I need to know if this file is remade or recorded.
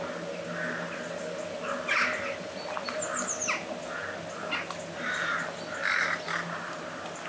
recorded